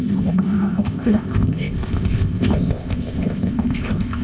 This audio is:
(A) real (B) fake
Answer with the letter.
B